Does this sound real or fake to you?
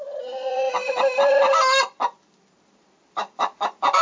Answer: fake